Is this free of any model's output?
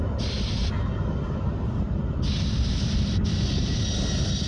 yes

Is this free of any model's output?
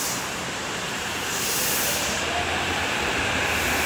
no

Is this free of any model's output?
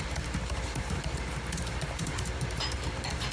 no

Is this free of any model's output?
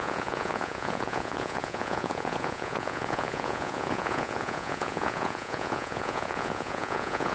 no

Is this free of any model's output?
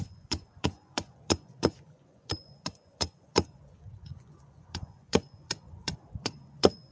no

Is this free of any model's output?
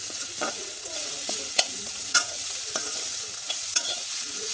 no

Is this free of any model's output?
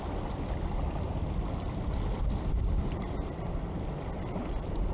yes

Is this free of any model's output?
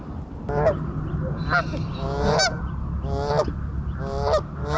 yes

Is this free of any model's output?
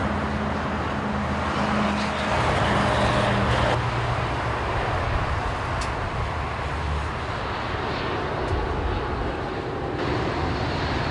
yes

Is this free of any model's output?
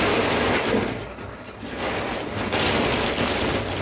yes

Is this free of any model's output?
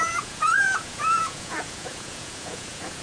no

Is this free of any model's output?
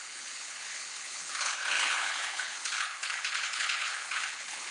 no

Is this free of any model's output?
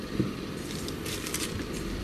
no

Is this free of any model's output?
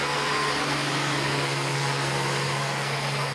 no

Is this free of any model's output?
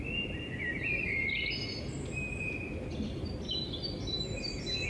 yes